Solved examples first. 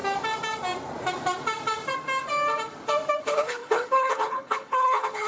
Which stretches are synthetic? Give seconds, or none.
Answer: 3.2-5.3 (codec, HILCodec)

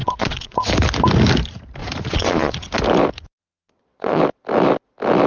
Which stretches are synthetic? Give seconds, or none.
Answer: 0.0-0.7 (vocoder, Vocos); 1.8-2.7; 3.4-4.2

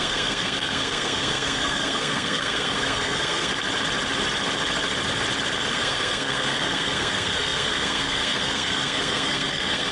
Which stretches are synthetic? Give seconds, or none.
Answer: 0.0-3.5 (codec, SNAC); 5.7-9.9

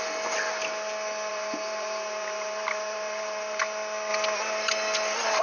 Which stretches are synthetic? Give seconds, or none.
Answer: 1.3-3.6 (vocoder, BigVGAN v2)

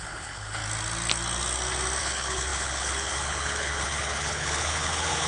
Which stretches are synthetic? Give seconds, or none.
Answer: 0.0-0.6 (codec, HILCodec); 2.0-5.3